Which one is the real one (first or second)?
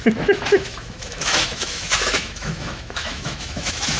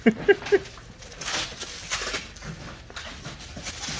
second